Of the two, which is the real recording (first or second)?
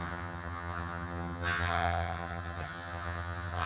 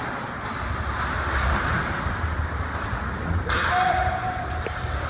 second